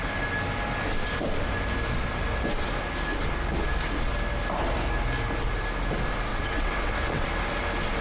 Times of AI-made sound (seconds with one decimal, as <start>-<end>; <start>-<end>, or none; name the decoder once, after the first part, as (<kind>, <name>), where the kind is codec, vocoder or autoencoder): 6.3-7.3 (vocoder, WaveNeXt)